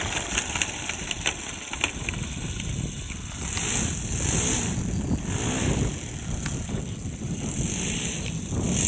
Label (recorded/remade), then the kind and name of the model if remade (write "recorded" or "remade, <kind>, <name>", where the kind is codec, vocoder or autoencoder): recorded